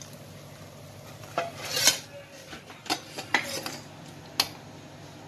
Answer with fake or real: real